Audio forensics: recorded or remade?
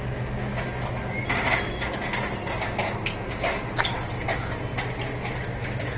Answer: recorded